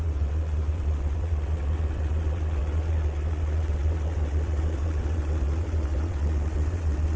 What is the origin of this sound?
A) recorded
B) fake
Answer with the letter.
B